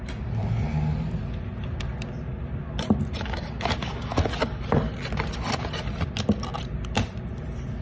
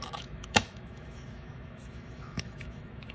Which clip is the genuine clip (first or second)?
first